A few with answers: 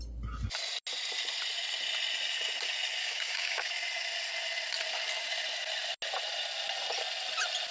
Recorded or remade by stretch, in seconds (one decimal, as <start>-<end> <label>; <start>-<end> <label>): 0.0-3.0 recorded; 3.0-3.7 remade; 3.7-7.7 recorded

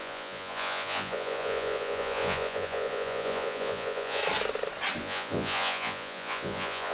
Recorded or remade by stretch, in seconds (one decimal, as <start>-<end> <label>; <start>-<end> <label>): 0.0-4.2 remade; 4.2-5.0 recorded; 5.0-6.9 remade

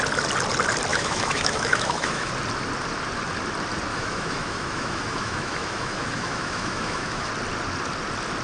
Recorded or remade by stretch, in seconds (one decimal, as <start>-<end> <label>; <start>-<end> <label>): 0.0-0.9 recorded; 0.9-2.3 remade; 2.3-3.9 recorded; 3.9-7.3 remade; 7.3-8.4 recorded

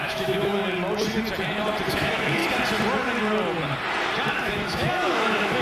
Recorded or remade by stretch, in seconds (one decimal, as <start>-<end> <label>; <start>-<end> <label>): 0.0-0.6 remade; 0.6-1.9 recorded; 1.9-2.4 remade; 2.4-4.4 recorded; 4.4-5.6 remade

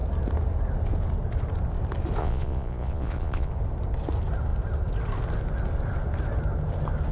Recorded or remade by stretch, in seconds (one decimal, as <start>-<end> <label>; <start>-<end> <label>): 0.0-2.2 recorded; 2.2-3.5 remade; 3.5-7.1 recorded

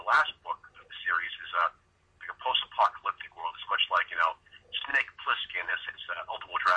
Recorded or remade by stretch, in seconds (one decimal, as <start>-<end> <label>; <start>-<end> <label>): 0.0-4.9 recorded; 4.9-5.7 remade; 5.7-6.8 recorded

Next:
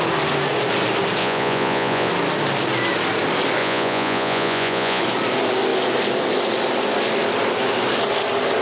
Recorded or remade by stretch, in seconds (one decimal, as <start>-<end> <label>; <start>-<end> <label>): 0.0-1.2 recorded; 1.2-2.1 remade; 2.1-3.6 recorded; 3.6-5.0 remade; 5.0-8.6 recorded

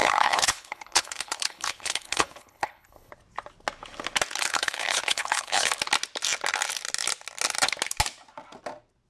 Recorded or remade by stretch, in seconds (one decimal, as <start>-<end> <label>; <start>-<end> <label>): 0.0-3.1 remade; 3.1-4.5 recorded; 4.5-5.7 remade; 5.7-9.1 recorded